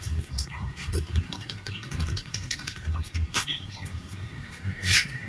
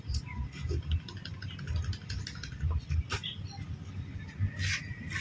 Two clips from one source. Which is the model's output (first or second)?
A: first